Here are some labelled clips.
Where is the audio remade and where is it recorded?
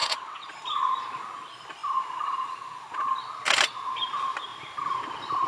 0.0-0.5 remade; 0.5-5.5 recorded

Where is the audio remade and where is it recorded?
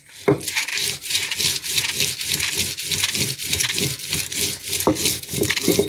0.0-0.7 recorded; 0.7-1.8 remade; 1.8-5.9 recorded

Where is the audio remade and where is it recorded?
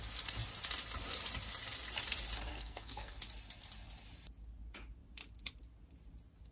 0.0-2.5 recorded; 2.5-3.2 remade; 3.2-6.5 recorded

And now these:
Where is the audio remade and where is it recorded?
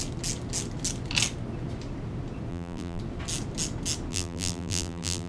0.0-2.5 recorded; 2.5-3.0 remade; 3.0-4.1 recorded; 4.1-5.3 remade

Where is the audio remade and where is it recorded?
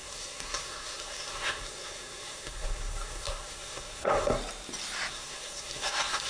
0.0-4.4 remade; 4.4-5.1 recorded; 5.1-6.3 remade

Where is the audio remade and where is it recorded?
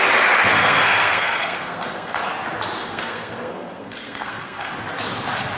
0.0-0.5 recorded; 0.5-2.2 remade; 2.2-2.8 recorded; 2.8-4.7 remade; 4.7-5.6 recorded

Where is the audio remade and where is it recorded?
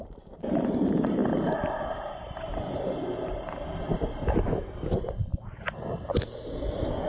0.0-5.3 remade; 5.3-7.1 recorded